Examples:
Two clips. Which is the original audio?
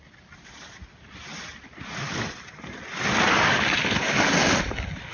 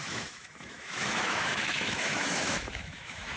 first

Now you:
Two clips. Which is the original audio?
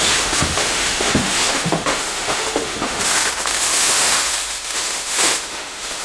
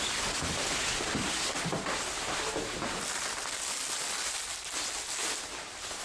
second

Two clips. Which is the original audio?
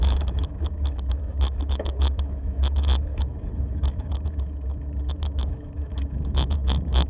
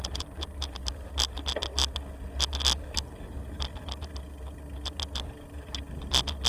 second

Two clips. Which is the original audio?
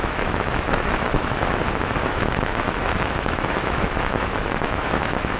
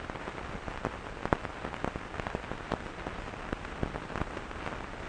second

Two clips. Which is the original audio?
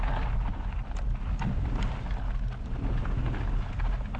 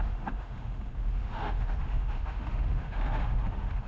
first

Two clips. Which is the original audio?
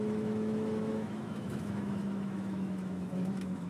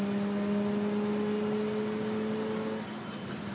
second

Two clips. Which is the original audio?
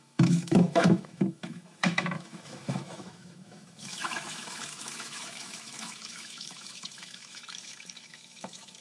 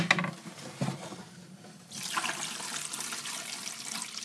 second